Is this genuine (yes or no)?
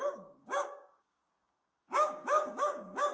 no